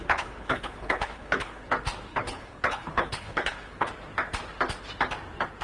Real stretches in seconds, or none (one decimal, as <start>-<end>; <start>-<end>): 1.7-2.1; 3.9-5.6